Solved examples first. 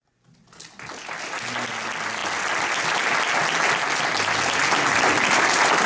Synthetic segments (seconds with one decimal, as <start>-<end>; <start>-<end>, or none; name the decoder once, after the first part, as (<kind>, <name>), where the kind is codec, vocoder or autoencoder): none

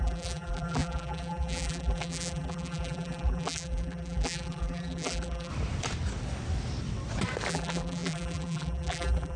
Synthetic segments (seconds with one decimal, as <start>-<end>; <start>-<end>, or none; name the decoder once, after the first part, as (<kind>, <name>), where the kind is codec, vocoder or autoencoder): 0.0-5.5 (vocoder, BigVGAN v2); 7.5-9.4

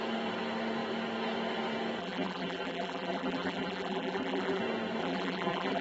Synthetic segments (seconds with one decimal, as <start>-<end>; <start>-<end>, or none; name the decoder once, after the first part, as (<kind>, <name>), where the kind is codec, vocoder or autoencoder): 2.0-4.6 (vocoder, BigVGAN v2); 5.0-5.8

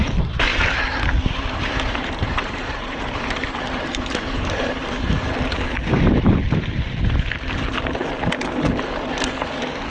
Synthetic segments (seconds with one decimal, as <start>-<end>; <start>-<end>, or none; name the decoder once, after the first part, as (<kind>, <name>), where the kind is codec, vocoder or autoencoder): 0.0-0.5 (vocoder, BigVGAN v2); 1.5-4.8

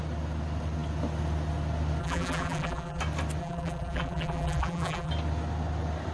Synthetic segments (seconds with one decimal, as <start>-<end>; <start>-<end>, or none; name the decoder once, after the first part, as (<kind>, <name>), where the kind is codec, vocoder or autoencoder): 2.0-3.0 (vocoder, BigVGAN v2); 3.4-5.1